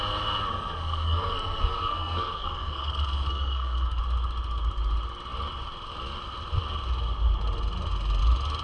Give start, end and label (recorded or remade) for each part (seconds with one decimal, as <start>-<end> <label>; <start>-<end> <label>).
0.0-0.5 recorded; 0.5-4.0 remade; 4.0-8.6 recorded